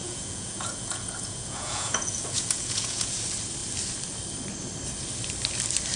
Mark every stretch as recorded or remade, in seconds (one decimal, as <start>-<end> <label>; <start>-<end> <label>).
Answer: 0.0-3.1 remade; 3.1-6.0 recorded